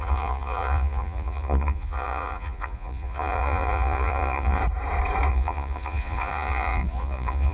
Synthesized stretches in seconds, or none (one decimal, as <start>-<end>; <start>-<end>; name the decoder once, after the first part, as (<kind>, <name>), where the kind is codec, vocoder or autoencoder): 0.0-4.6 (vocoder, Vocos); 5.3-7.5